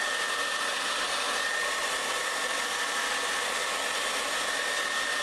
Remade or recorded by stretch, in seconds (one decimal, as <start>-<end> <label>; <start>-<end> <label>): 0.0-5.2 recorded

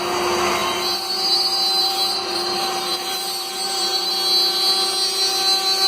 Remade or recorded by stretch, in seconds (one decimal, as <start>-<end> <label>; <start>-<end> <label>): 0.0-0.6 recorded; 0.6-4.1 remade; 4.1-5.9 recorded

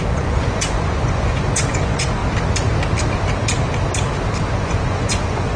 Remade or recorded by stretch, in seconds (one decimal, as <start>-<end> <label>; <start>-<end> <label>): 0.0-2.2 remade; 2.2-4.5 recorded; 4.5-5.6 remade